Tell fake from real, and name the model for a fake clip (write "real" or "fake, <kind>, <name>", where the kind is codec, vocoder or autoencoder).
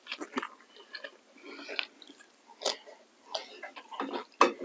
real